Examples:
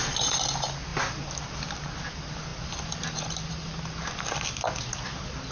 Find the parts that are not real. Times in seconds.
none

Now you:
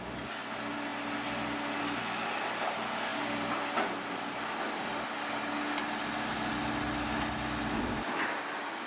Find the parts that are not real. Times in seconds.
none

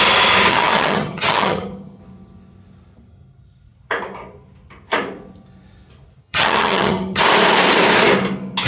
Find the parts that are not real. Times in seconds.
0.5-2.0; 6.2-7.2

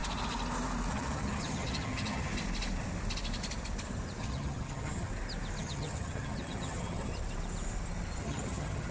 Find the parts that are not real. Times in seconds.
0.9-2.3; 4.2-5.1; 5.6-7.1; 8.2-8.9

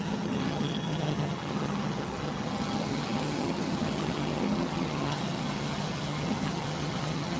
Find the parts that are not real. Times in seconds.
0.0-7.4

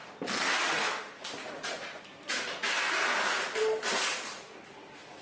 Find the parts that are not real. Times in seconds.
none

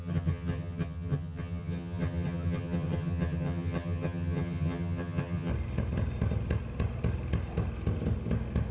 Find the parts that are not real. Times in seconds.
0.0-5.5

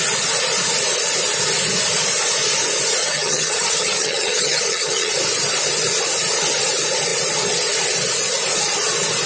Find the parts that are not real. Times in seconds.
3.0-5.1